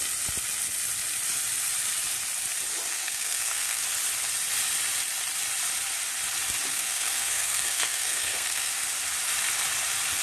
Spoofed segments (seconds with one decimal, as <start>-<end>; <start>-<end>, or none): 2.9-3.8; 6.7-8.7